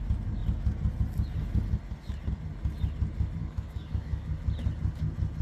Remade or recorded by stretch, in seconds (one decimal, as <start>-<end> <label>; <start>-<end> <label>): 0.0-3.4 recorded; 3.4-4.4 remade; 4.4-5.4 recorded